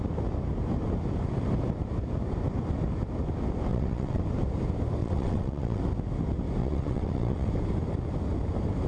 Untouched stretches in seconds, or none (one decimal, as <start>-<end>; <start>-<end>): 0.0-3.7; 4.2-5.0; 5.8-6.6; 7.5-8.9